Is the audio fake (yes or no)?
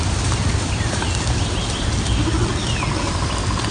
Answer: no